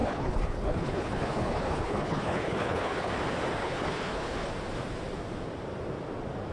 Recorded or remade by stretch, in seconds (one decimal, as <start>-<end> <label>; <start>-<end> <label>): 0.0-3.1 remade; 3.1-3.6 recorded; 3.6-4.5 remade; 4.5-6.5 recorded